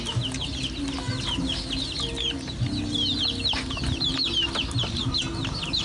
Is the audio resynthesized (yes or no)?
no